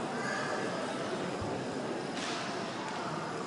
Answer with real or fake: real